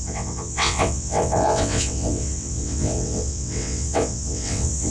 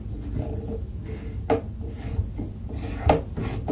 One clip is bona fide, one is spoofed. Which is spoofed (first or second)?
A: first